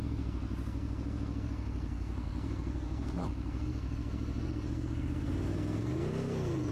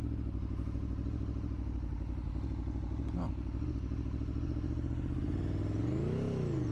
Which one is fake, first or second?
first